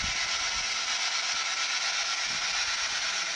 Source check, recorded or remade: recorded